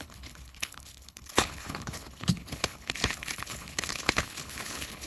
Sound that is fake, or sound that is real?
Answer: fake